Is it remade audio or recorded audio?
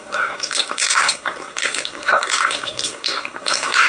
remade